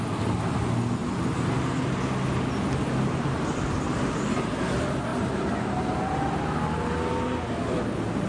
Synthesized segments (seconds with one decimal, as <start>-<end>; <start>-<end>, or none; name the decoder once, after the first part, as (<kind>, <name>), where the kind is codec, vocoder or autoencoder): none